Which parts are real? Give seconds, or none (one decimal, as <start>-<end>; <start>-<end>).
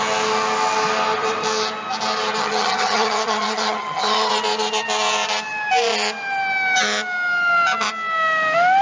0.0-2.4; 4.3-8.8